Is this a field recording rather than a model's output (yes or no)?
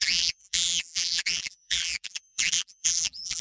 no